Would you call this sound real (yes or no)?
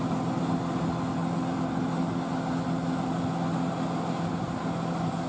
yes